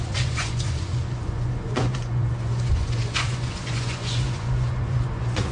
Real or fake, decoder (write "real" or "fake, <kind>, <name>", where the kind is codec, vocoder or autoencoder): fake, vocoder, Vocos